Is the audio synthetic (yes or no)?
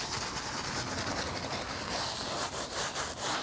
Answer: no